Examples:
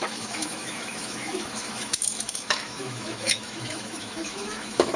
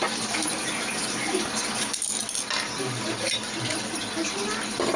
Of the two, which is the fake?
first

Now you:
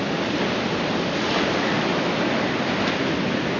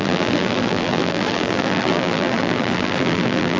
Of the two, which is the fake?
second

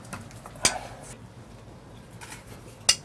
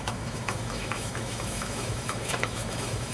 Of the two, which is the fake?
second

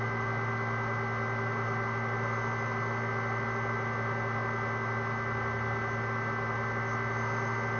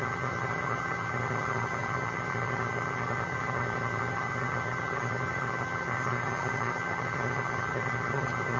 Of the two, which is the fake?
second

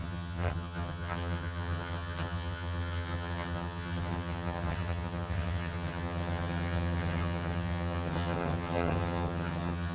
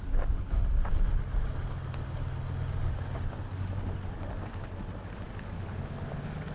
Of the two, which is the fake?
first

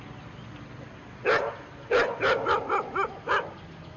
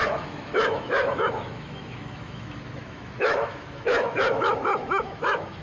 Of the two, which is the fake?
second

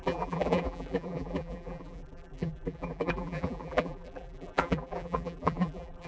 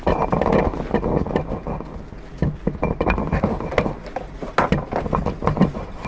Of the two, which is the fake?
first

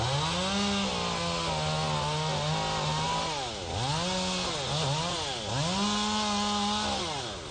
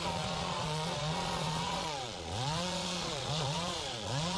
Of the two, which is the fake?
second